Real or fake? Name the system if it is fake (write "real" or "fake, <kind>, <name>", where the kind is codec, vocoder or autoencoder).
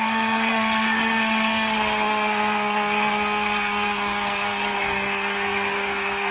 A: fake, codec, SNAC